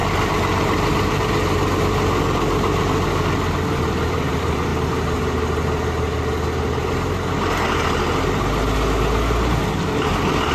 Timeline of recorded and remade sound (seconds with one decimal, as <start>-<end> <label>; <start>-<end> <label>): 0.0-3.5 recorded; 3.5-4.7 remade; 4.7-9.6 recorded; 9.6-10.5 remade